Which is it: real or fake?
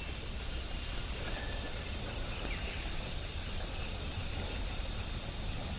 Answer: real